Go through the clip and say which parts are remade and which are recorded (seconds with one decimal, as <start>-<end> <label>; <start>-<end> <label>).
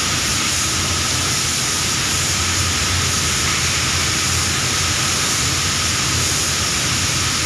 0.0-7.5 recorded